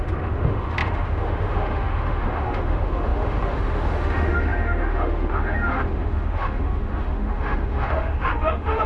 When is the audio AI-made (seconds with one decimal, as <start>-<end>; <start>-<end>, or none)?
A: 0.0-8.9